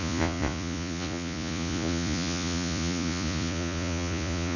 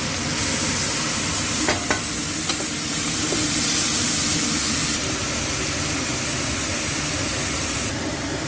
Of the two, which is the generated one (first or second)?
first